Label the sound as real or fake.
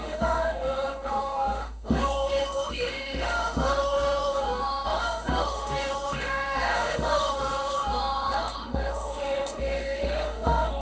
fake